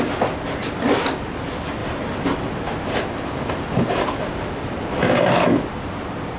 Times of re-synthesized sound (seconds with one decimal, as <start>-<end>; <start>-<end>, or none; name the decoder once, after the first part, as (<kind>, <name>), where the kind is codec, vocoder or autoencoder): none